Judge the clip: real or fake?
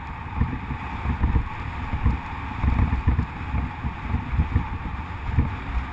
real